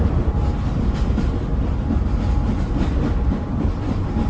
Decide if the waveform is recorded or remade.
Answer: recorded